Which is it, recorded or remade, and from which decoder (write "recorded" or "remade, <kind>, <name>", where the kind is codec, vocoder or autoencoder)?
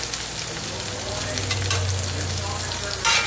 recorded